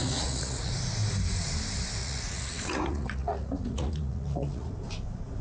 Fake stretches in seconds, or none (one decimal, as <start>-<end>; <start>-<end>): 0.0-0.7; 2.0-4.7